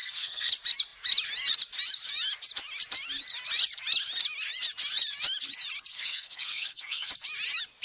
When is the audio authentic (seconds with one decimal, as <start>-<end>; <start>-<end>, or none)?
0.5-5.9; 7.1-7.8

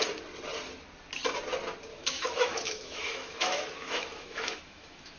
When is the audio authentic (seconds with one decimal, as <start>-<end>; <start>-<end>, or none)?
0.0-1.9

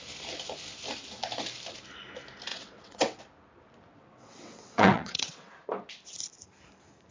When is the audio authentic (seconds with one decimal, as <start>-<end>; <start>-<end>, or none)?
0.0-2.5; 3.2-3.9; 5.5-7.1

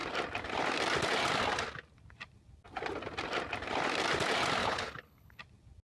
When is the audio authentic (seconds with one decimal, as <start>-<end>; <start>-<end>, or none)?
0.0-4.6; 5.4-5.9

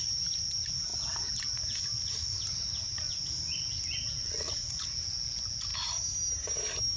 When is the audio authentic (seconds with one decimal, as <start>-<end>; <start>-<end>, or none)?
0.0-4.2; 4.9-7.0

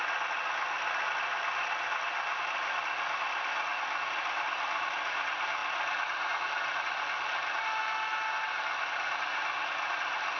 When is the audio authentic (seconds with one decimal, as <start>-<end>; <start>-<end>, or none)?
0.0-10.4

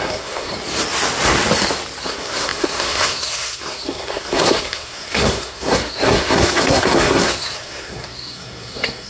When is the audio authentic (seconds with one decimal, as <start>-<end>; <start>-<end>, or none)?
0.5-2.0

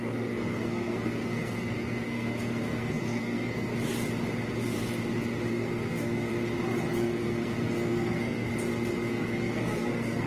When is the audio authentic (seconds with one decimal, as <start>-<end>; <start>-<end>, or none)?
3.7-5.5; 6.3-6.9; 8.5-9.1